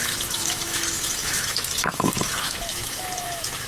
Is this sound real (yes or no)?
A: no